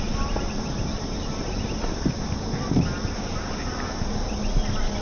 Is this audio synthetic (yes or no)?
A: no